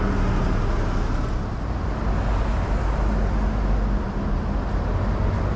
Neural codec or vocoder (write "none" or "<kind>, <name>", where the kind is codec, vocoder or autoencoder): none